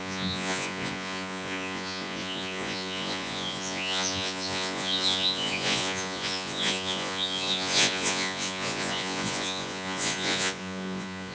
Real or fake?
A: fake